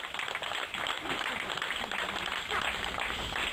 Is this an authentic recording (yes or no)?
no